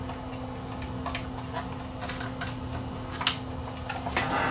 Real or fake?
real